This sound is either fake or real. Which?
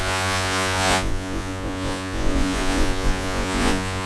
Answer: fake